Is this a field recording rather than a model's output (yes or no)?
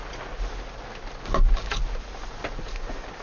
yes